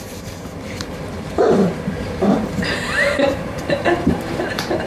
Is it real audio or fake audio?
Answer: fake